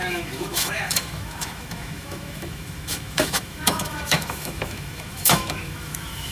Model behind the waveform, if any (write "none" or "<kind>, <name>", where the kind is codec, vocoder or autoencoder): autoencoder, DAC-VAE